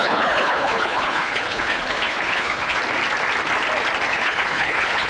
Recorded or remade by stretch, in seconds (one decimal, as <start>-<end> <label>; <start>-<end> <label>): 0.0-2.8 remade; 2.8-4.1 recorded; 4.1-5.1 remade